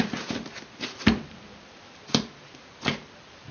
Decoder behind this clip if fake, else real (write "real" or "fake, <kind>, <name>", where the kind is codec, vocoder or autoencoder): real